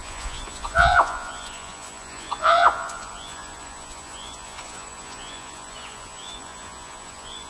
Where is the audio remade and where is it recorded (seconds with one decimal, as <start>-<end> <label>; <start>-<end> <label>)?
0.0-7.5 remade